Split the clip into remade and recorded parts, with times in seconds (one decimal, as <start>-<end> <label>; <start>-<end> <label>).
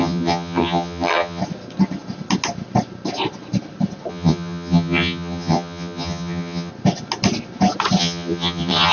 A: 0.0-1.4 remade; 1.4-4.1 recorded; 4.1-6.7 remade; 6.7-8.0 recorded; 8.0-8.9 remade